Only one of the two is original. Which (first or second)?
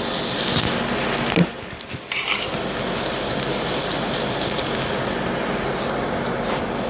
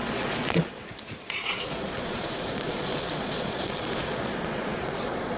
first